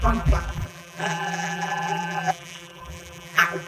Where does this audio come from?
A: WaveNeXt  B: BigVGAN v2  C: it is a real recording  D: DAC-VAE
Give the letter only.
B